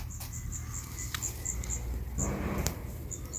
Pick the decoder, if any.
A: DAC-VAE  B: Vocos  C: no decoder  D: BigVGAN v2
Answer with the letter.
C